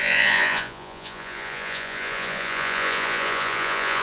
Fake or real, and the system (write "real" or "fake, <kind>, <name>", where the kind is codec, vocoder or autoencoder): fake, vocoder, Vocos